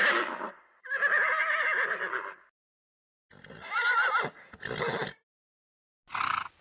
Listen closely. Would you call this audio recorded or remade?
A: recorded